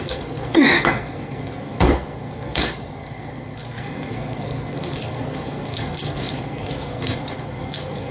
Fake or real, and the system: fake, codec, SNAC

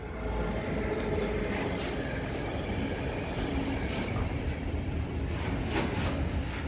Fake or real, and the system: real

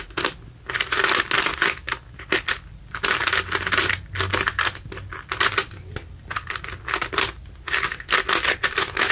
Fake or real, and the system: real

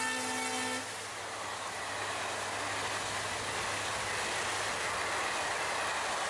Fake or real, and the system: real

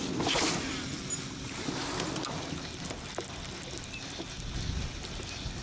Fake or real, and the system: real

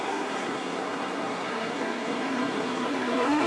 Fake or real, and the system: fake, codec, SNAC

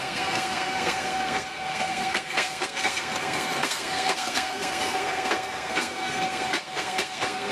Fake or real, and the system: fake, codec, SNAC